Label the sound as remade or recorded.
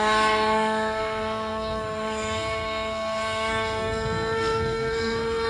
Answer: remade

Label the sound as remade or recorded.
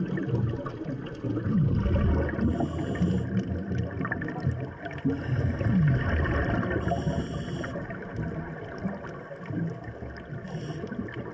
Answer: recorded